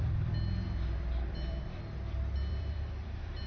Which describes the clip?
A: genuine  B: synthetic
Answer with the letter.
B